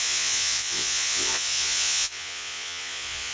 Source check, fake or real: fake